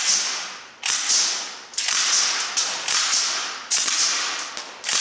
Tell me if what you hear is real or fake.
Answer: real